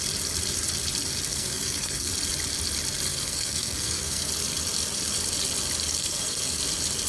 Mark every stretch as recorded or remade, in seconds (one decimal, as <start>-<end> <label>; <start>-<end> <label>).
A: 0.0-1.3 recorded; 1.3-2.1 remade; 2.1-3.1 recorded; 3.1-4.3 remade; 4.3-5.9 recorded; 5.9-6.6 remade; 6.6-7.1 recorded